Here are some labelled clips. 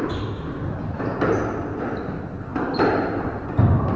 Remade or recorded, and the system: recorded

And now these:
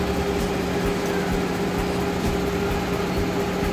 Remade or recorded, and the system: recorded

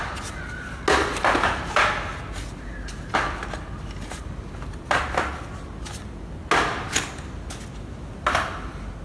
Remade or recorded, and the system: recorded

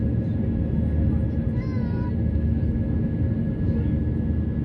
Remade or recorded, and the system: recorded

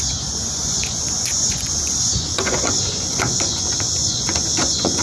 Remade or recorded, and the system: remade, vocoder, Vocos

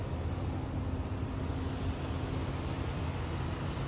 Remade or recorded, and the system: recorded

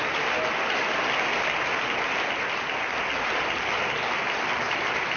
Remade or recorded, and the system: recorded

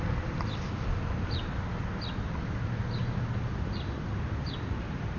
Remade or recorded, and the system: recorded